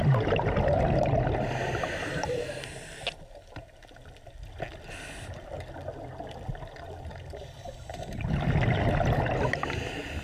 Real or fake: real